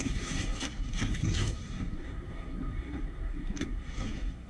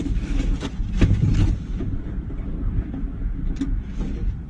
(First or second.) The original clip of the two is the second